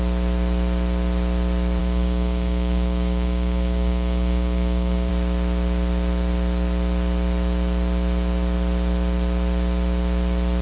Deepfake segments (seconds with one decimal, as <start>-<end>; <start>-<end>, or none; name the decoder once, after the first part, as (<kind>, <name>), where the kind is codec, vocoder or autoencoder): 1.8-5.1 (codec, DAC)